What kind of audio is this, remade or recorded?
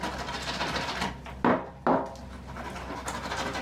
recorded